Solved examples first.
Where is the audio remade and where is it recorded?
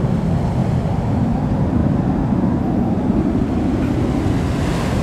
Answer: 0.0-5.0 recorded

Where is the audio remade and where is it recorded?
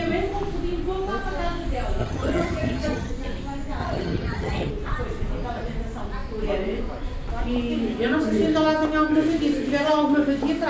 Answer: 0.0-2.0 recorded; 2.0-3.1 remade; 3.1-3.8 recorded; 3.8-4.7 remade; 4.7-10.7 recorded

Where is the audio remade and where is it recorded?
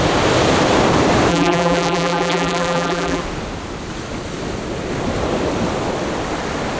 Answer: 0.0-1.3 recorded; 1.3-3.2 remade; 3.2-6.8 recorded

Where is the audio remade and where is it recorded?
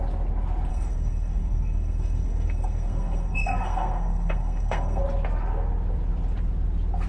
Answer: 0.0-0.7 recorded; 0.7-5.0 remade; 5.0-7.1 recorded